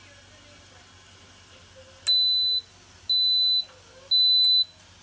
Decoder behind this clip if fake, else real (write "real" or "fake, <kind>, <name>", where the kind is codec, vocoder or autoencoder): real